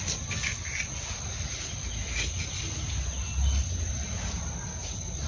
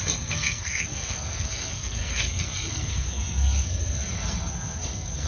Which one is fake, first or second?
second